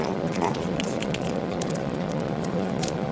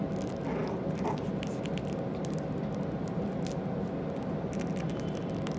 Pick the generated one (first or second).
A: first